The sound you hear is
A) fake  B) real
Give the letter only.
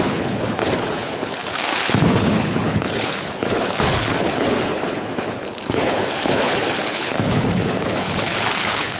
A